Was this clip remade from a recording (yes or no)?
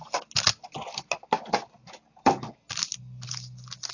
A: no